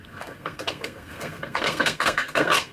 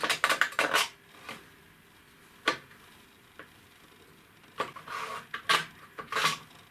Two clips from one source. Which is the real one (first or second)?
second